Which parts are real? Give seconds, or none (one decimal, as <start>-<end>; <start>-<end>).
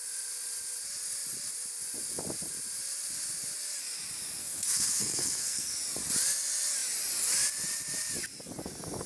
0.0-4.4; 5.8-9.1